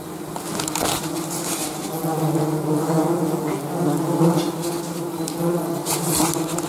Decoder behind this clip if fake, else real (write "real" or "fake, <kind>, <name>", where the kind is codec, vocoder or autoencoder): real